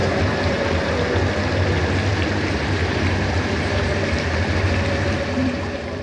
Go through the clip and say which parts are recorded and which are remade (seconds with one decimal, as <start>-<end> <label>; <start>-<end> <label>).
0.0-0.9 remade; 0.9-2.1 recorded; 2.1-6.0 remade